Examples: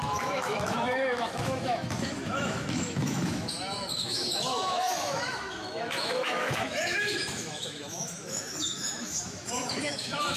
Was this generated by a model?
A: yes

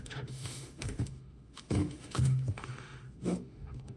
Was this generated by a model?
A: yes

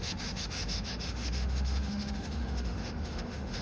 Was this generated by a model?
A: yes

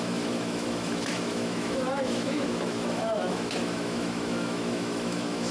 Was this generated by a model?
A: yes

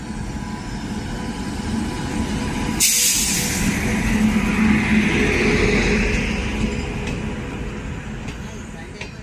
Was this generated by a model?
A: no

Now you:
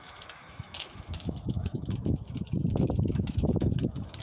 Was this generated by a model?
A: yes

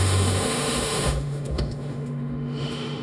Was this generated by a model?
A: yes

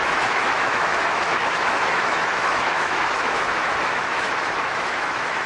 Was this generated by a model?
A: yes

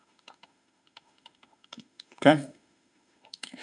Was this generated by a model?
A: yes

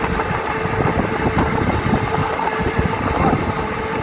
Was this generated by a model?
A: no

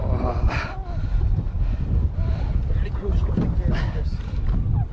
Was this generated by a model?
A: no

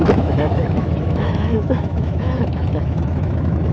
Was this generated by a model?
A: yes